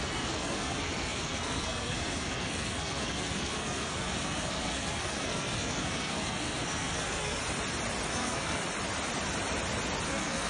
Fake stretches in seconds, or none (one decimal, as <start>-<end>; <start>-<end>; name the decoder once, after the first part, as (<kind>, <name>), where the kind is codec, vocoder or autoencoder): 0.0-7.4 (codec, SNAC); 8.1-8.6; 10.1-10.5